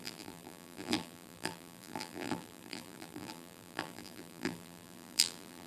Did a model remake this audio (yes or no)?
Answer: yes